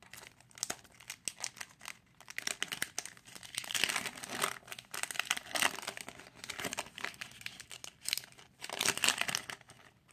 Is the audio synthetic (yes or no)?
no